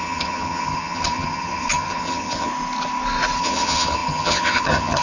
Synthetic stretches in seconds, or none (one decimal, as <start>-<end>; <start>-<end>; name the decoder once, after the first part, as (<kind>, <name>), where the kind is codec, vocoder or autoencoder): 0.0-2.5 (vocoder, HiFi-GAN); 3.4-5.0